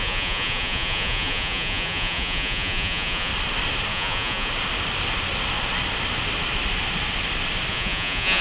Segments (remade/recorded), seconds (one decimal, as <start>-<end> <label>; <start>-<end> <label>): 0.0-3.3 remade; 3.3-3.9 recorded; 3.9-4.5 remade; 4.5-7.7 recorded; 7.7-8.4 remade